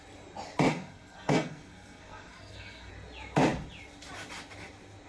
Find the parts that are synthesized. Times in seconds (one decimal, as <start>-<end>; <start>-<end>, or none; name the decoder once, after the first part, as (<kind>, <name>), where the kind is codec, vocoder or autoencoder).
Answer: 0.7-2.9 (codec, SNAC)